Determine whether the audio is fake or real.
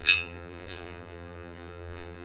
fake